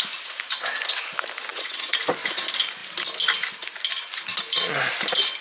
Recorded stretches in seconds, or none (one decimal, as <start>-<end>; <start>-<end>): 0.0-1.5; 2.0-5.4